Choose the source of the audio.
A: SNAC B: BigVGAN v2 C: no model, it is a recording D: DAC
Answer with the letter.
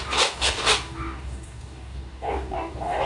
D